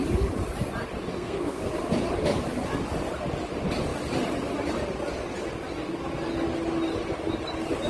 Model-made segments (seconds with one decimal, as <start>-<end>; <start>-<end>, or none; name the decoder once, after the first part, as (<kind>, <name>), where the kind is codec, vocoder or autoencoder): 1.1-1.7 (codec, SNAC)